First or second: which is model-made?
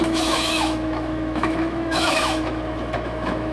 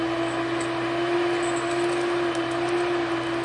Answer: first